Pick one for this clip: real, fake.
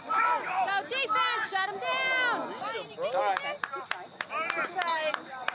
real